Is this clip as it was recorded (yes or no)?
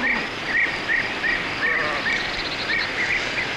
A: yes